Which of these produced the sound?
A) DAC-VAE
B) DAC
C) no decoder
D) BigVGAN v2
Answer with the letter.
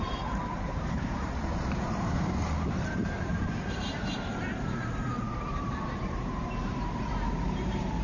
D